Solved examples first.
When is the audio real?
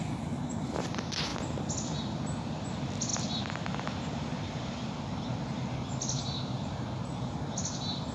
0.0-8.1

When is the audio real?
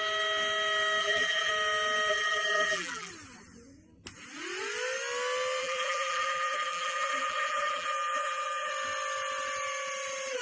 0.0-1.0; 1.5-2.1; 3.1-5.6; 8.7-10.4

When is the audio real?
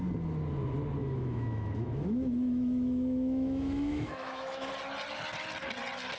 0.0-1.0; 4.7-6.2